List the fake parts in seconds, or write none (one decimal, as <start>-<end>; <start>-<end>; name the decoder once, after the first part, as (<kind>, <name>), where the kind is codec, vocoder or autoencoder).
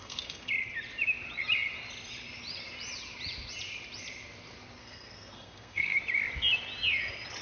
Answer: 0.0-0.5 (codec, SNAC); 4.8-6.0